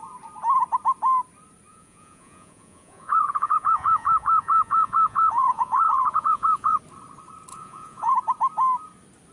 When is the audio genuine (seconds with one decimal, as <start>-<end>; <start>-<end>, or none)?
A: 0.0-1.7; 6.8-7.5; 8.1-9.3